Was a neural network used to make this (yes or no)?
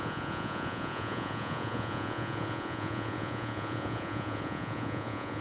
yes